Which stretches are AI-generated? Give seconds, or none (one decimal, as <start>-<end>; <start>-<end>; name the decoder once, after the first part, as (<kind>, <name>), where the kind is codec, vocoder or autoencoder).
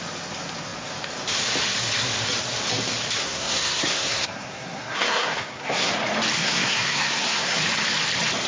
3.2-5.9 (codec, SNAC); 6.4-7.6